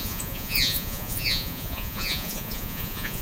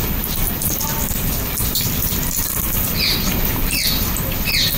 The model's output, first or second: first